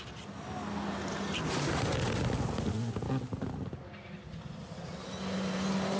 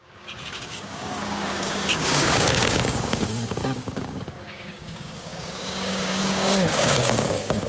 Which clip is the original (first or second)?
first